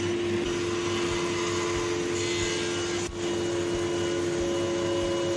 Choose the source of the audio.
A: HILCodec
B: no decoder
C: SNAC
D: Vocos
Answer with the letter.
B